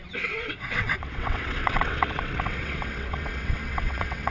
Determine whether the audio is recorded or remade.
remade